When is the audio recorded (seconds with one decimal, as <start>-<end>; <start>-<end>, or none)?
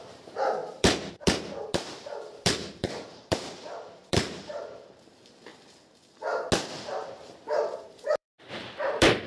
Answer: 5.5-7.8